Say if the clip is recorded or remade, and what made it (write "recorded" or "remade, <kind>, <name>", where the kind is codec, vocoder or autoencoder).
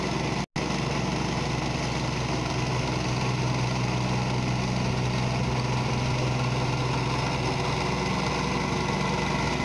recorded